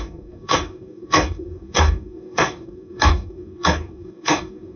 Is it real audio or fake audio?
fake